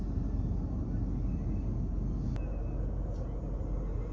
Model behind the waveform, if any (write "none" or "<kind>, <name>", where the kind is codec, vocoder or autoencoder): none